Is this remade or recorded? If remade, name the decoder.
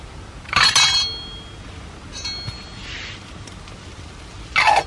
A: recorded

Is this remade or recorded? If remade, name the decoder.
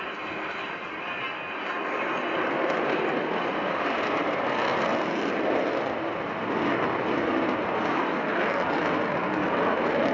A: recorded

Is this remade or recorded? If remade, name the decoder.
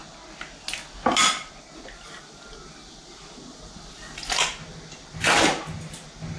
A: recorded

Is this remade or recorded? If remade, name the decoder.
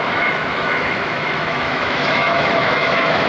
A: remade, autoencoder, DAC-VAE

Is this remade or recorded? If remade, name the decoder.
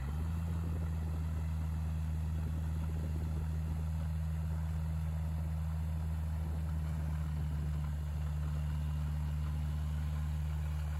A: recorded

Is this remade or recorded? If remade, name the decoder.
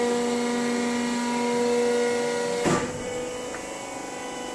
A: recorded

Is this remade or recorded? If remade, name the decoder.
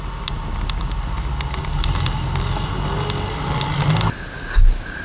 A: recorded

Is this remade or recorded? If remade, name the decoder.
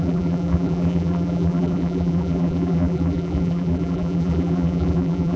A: remade, vocoder, BigVGAN v2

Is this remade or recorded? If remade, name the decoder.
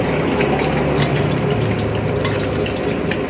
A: recorded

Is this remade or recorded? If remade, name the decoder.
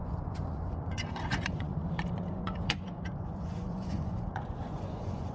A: remade, vocoder, Vocos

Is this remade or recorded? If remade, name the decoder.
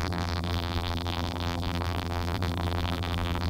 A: remade, vocoder, BigVGAN v2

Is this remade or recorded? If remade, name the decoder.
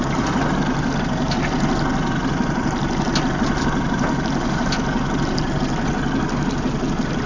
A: recorded